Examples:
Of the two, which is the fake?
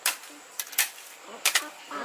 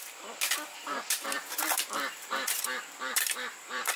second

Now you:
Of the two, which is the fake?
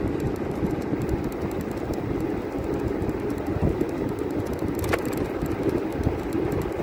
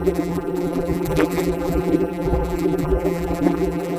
second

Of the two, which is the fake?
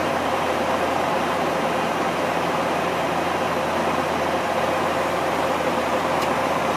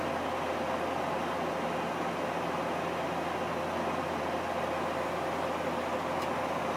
first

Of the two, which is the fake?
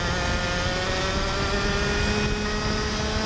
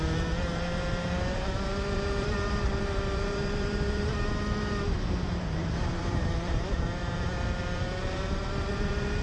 second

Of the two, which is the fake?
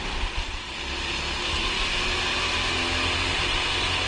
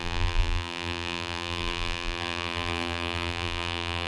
second